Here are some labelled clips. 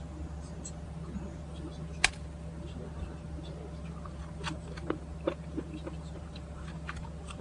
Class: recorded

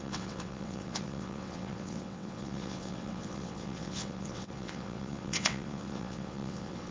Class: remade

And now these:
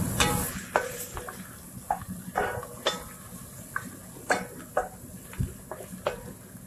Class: recorded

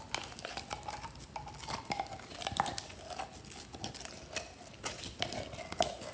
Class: recorded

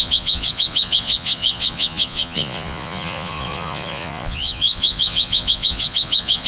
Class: remade